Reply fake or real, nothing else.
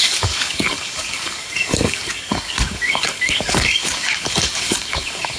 fake